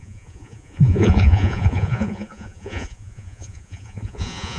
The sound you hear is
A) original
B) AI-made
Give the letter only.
B